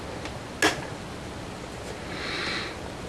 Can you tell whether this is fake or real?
real